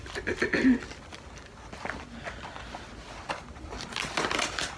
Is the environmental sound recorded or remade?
recorded